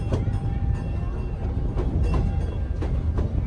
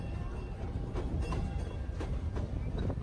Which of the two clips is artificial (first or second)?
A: second